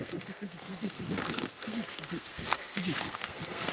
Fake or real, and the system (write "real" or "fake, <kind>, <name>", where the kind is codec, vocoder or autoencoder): fake, codec, SNAC